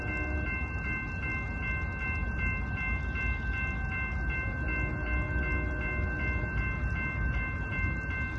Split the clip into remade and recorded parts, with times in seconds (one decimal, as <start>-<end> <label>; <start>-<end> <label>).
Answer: 0.0-8.4 recorded